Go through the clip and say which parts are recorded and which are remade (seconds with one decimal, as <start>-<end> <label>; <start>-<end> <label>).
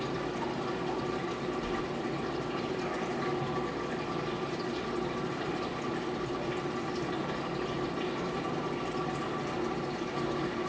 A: 0.0-10.7 recorded